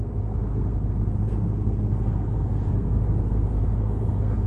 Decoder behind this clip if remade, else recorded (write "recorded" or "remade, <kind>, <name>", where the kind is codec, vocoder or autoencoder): remade, codec, SNAC